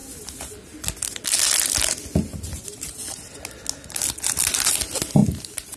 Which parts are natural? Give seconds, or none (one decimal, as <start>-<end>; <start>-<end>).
0.0-5.8